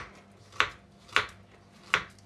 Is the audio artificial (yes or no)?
no